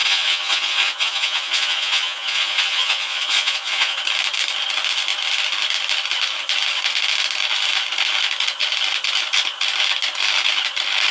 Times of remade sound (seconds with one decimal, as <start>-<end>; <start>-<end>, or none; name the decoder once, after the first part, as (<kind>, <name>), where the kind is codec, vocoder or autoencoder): 0.0-4.0 (vocoder, Vocos)